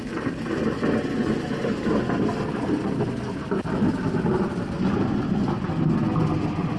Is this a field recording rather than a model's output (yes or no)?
yes